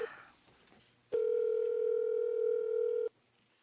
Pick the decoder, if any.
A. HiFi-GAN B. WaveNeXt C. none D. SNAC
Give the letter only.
C